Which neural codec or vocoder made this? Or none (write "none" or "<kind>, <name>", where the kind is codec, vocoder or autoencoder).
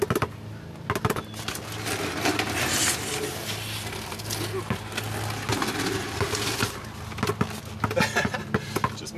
none